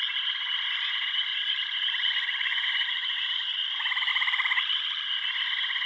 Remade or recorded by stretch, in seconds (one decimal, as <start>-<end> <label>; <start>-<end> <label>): 0.0-1.3 recorded; 1.3-4.1 remade; 4.1-5.9 recorded